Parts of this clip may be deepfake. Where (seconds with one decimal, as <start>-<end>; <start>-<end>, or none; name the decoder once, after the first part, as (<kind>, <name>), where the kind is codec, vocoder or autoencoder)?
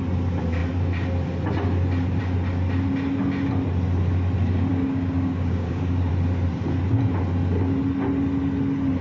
4.7-6.1 (codec, DAC)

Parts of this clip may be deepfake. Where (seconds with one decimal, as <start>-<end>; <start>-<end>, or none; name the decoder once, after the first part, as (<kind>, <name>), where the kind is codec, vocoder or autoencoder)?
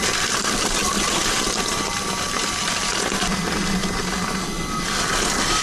3.8-4.4 (vocoder, BigVGAN v2)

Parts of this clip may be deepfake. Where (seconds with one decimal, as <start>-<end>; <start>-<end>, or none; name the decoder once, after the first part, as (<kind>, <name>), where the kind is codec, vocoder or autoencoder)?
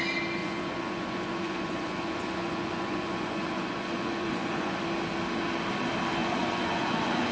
0.4-4.8 (vocoder, Vocos); 6.2-7.3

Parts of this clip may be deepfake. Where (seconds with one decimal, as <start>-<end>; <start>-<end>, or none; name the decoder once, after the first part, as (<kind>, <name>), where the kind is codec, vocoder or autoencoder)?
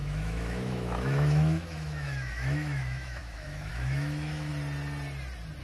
0.0-4.5 (autoencoder, DAC-VAE)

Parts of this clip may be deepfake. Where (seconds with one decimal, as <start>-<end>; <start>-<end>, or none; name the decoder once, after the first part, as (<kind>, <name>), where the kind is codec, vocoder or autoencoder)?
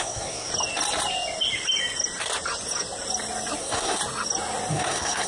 0.0-0.5 (codec, SNAC); 3.6-4.0; 4.7-5.3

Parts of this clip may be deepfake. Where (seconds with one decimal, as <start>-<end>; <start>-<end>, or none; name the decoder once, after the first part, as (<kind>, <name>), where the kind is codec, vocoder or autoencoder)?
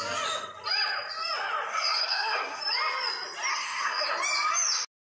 1.7-2.6 (codec, SNAC); 3.5-4.1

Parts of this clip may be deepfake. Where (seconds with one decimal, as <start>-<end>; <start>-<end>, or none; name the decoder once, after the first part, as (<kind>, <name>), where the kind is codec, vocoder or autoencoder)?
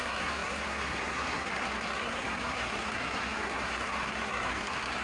0.0-5.0 (codec, SNAC)